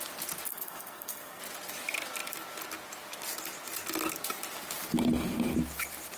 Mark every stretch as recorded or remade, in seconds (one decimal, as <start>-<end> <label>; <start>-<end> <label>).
0.0-0.5 recorded; 0.5-1.4 remade; 1.4-6.2 recorded